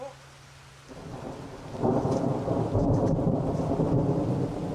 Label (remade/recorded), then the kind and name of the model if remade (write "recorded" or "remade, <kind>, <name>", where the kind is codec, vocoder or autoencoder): recorded